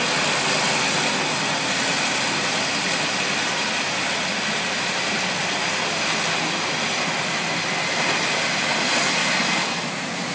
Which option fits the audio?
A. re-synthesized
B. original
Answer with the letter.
B